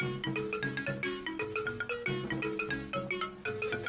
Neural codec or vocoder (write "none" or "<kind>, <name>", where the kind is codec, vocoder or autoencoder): none